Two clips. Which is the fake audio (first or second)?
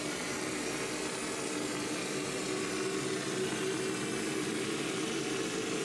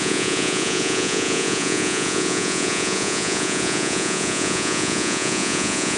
second